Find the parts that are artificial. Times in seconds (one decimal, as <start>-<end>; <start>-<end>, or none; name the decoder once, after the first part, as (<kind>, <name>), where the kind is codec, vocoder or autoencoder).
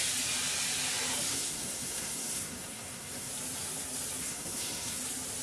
1.3-3.3 (codec, SNAC); 4.2-5.0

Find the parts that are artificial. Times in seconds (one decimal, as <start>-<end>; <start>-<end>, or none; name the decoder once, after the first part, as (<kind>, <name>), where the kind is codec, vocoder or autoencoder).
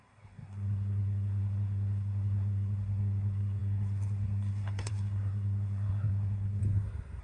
0.0-6.6 (codec, SNAC)